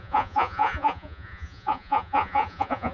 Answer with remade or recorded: remade